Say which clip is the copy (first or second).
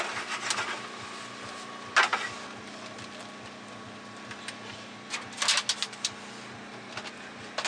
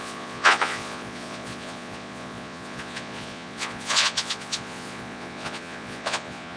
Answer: second